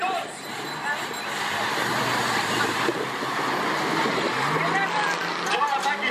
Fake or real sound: real